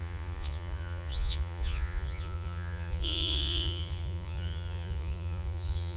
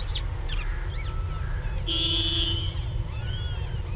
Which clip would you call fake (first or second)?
first